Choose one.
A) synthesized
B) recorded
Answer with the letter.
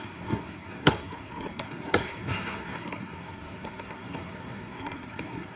A